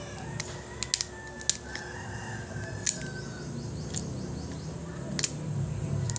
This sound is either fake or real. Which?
real